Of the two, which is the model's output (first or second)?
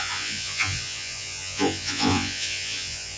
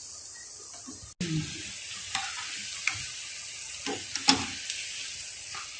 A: first